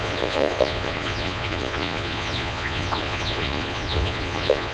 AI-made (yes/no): yes